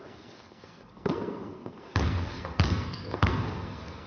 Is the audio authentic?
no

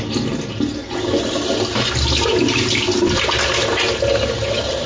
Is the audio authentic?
yes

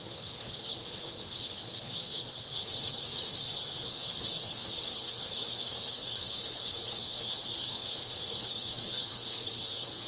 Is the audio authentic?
no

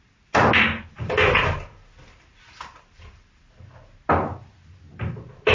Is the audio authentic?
yes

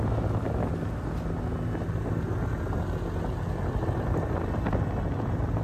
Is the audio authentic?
yes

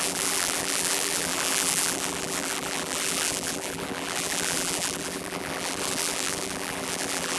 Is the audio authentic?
no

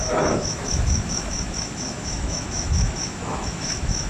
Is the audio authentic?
no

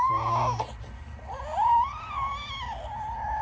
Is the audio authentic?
yes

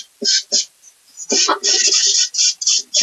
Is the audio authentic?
yes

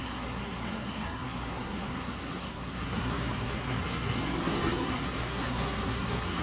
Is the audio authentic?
no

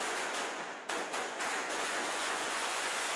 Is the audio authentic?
no